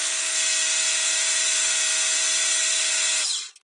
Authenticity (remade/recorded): recorded